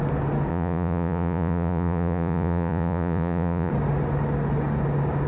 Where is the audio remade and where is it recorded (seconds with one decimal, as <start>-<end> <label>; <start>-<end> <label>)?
0.0-0.5 recorded; 0.5-3.7 remade; 3.7-5.3 recorded